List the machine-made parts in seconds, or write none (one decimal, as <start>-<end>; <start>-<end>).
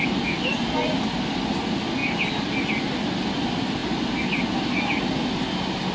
none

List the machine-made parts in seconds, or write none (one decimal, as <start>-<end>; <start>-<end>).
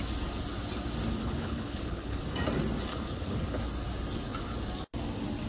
1.2-2.2; 2.9-3.6